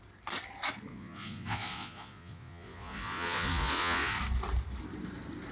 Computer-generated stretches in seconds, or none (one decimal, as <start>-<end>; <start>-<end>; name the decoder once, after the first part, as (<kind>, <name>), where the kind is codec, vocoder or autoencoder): 0.9-4.2 (vocoder, Vocos)